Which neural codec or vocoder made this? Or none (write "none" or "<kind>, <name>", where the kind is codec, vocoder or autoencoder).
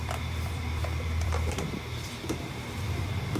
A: vocoder, BigVGAN v2